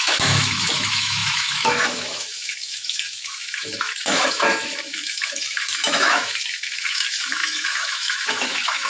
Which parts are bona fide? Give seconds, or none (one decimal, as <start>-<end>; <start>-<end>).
none